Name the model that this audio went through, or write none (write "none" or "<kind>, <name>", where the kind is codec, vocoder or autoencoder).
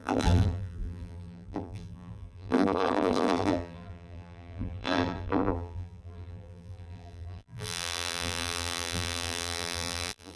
vocoder, BigVGAN v2